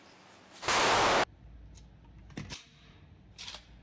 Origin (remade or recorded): recorded